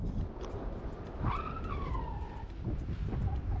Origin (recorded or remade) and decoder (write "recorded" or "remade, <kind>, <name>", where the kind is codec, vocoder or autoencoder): recorded